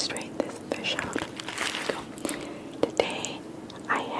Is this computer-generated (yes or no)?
no